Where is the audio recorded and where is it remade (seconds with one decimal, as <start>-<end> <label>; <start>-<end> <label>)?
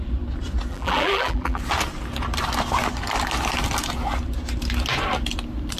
0.0-0.7 recorded; 0.7-1.6 remade; 1.6-5.8 recorded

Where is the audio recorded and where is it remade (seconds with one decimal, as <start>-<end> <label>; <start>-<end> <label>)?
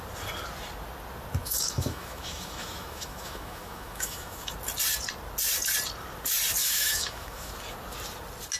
0.0-1.4 recorded; 1.4-4.5 remade; 4.5-6.6 recorded; 6.6-7.5 remade; 7.5-8.6 recorded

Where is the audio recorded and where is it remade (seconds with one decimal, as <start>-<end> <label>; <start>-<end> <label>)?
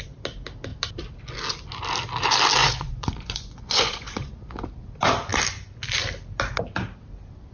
0.0-2.6 recorded; 2.6-4.3 remade; 4.3-7.5 recorded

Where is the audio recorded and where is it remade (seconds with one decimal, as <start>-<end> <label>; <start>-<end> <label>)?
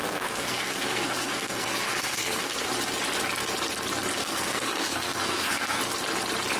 0.0-2.7 remade; 2.7-4.2 recorded; 4.2-5.8 remade; 5.8-6.6 recorded